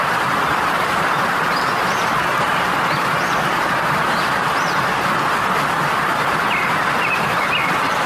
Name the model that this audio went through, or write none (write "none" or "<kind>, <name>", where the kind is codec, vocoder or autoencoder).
none